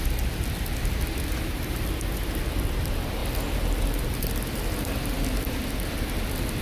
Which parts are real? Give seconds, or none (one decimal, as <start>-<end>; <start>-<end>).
0.0-6.6